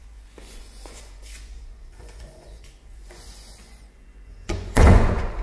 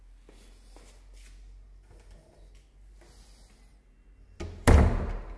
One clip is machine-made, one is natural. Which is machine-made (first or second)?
first